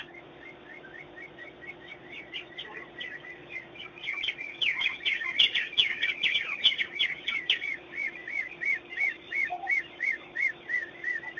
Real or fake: fake